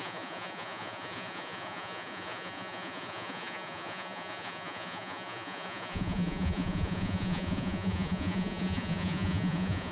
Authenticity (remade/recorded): remade